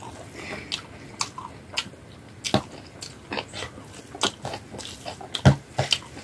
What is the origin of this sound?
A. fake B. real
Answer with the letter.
B